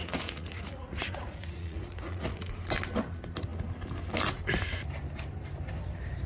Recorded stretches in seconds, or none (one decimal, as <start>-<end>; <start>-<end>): 2.5-6.3